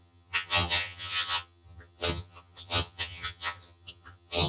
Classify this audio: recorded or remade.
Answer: remade